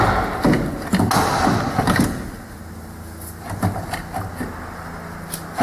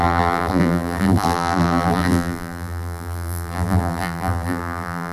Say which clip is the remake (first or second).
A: second